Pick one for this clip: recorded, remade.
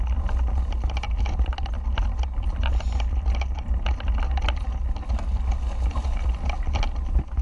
recorded